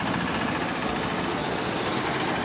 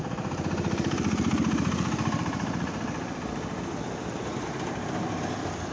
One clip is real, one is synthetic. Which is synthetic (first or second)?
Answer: second